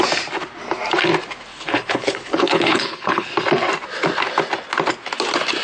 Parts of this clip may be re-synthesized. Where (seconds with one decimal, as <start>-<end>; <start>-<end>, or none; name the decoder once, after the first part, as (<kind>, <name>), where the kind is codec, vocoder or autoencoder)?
1.5-3.3 (codec, HILCodec)